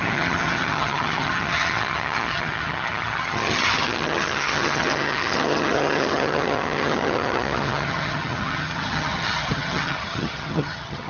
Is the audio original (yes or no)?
no